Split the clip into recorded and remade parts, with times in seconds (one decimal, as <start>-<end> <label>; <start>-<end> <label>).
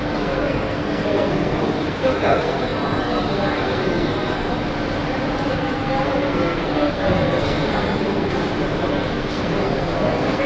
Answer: 0.0-4.5 remade; 4.5-5.5 recorded; 5.5-8.4 remade; 8.4-8.9 recorded; 8.9-10.5 remade